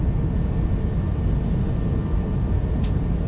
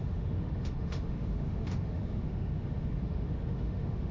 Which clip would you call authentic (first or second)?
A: first